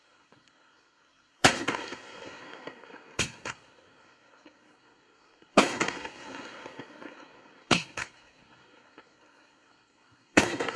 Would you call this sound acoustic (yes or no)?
no